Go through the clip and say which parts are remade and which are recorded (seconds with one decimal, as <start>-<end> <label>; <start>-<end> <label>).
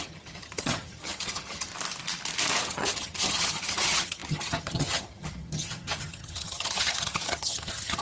0.0-1.7 remade; 1.7-2.6 recorded; 2.6-8.0 remade